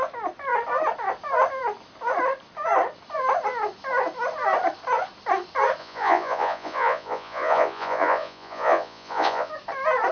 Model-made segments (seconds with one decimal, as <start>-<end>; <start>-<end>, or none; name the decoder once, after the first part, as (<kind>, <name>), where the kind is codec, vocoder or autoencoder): 5.8-9.5 (vocoder, Vocos)